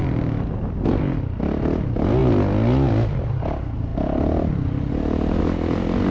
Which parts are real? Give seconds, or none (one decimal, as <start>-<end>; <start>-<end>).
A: 0.0-6.1